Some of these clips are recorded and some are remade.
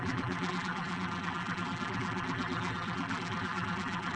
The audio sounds remade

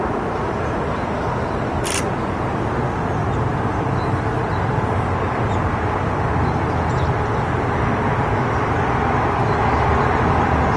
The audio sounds recorded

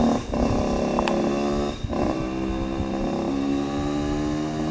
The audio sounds recorded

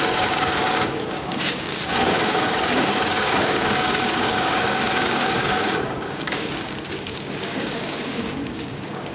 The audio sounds remade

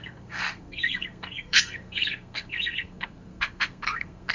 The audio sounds remade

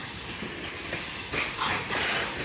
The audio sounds recorded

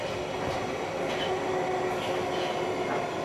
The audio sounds recorded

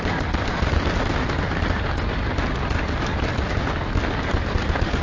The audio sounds recorded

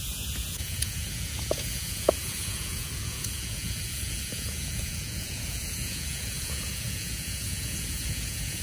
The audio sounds remade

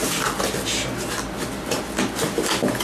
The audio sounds recorded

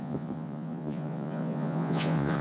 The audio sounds remade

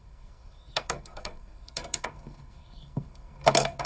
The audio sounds remade